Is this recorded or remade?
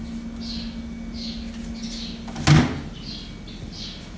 recorded